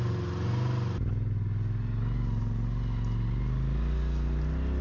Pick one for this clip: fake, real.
real